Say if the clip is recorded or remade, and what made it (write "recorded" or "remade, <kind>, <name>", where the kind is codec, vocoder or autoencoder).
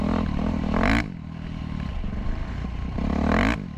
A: recorded